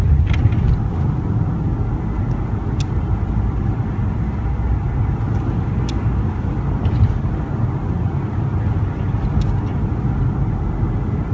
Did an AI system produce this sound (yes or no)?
no